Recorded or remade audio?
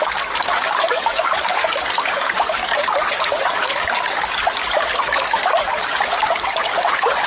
remade